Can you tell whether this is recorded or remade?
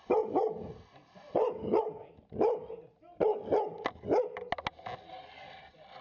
recorded